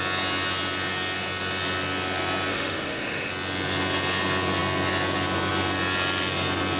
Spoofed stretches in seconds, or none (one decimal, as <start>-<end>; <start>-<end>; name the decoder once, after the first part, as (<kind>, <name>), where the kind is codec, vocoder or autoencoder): 2.5-3.3 (autoencoder, DAC-VAE)